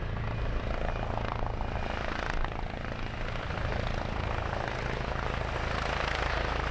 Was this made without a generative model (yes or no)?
yes